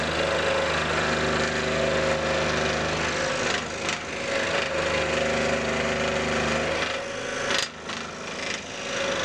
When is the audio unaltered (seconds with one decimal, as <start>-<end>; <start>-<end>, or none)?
0.0-9.2